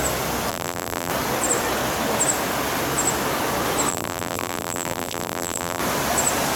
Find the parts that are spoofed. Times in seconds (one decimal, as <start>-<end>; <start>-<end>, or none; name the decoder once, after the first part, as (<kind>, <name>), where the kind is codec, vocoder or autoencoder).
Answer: 0.5-1.1 (vocoder, BigVGAN v2); 3.9-5.8